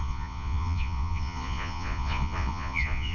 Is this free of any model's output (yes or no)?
no